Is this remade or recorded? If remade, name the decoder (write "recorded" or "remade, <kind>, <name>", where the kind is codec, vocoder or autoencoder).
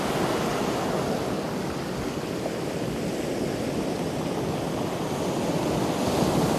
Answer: recorded